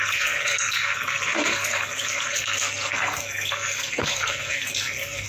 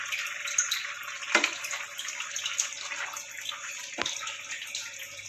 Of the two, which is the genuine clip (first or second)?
second